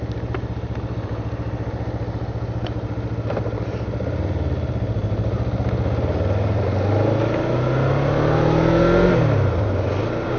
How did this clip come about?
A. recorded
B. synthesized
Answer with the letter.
A